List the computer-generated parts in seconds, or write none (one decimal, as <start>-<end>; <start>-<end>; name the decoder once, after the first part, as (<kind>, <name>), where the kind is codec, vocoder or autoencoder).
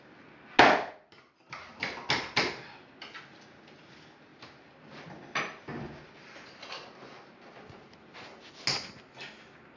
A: none